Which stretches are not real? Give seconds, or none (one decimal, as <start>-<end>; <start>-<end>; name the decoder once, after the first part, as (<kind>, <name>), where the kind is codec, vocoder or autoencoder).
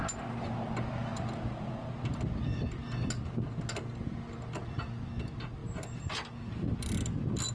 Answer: none